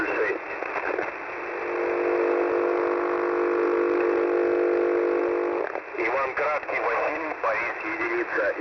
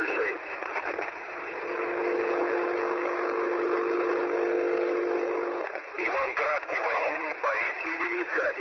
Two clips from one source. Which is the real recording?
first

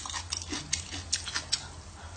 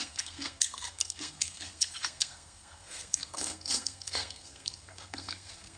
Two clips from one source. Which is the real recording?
first